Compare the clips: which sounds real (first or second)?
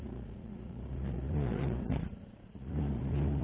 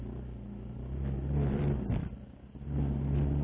second